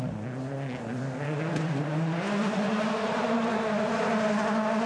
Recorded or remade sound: recorded